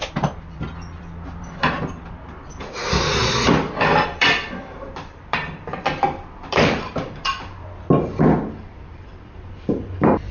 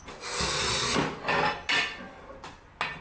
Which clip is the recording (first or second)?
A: second